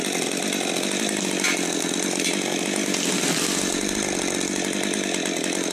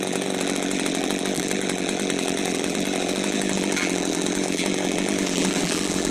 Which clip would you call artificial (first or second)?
second